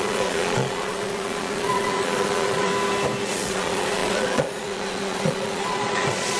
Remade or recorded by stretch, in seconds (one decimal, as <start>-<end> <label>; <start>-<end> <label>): 0.0-2.7 remade; 2.7-3.2 recorded; 3.2-6.4 remade